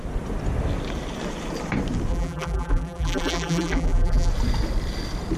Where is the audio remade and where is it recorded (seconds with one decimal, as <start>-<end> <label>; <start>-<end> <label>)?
0.0-2.1 recorded; 2.1-4.3 remade; 4.3-5.4 recorded